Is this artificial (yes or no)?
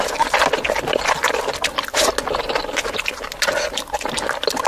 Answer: no